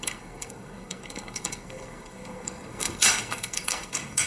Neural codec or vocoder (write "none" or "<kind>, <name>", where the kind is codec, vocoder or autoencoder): codec, SNAC